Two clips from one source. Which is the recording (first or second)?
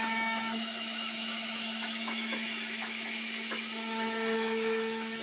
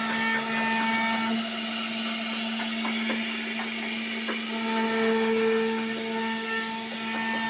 second